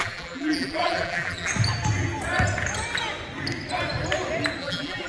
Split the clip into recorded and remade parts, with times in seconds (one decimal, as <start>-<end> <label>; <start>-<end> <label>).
0.0-1.5 remade; 1.5-4.6 recorded; 4.6-5.1 remade